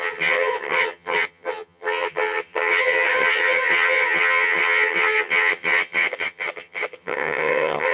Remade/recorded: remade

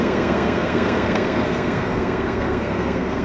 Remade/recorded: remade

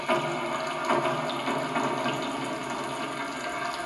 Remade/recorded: recorded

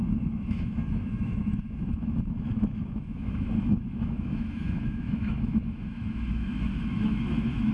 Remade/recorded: remade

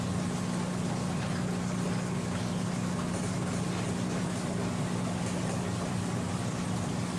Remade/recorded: recorded